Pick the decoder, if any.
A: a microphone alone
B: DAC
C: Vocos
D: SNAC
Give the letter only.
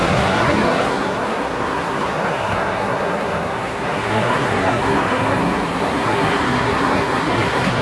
D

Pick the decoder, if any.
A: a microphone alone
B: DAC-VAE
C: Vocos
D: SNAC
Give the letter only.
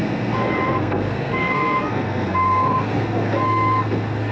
D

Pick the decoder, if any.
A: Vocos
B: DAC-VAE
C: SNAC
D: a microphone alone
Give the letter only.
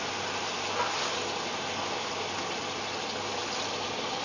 D